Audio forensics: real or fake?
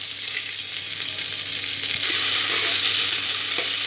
real